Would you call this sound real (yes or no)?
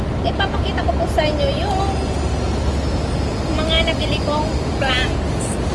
yes